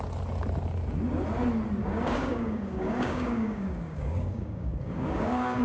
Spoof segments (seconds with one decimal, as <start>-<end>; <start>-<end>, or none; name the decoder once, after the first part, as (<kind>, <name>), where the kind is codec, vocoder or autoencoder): 1.8-5.6 (codec, DAC)